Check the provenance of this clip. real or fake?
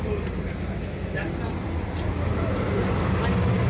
real